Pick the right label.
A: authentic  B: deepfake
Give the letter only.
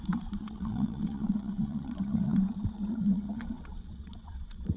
B